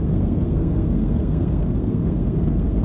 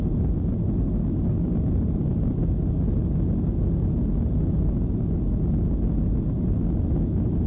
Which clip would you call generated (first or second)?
first